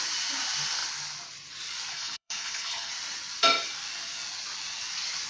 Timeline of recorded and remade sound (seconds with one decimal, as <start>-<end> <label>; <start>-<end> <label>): 0.0-1.9 recorded; 1.9-2.9 remade; 2.9-5.3 recorded